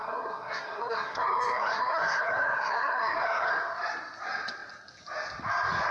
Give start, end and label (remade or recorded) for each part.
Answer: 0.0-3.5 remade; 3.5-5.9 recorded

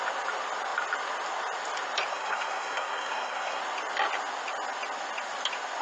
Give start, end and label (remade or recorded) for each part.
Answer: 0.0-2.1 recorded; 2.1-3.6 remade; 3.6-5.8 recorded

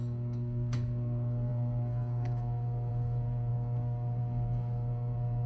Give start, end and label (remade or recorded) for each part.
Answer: 0.0-5.5 remade

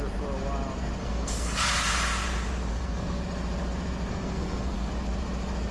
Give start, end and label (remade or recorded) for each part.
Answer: 0.0-1.0 recorded; 1.0-1.6 remade; 1.6-2.7 recorded; 2.7-3.2 remade; 3.2-4.1 recorded; 4.1-4.9 remade; 4.9-5.7 recorded